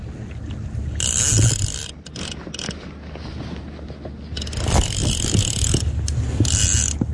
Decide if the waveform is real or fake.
real